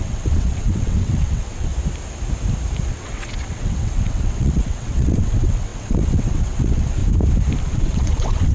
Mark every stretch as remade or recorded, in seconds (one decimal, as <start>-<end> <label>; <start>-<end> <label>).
0.0-1.7 remade; 1.7-2.9 recorded; 2.9-7.0 remade; 7.0-7.6 recorded; 7.6-8.5 remade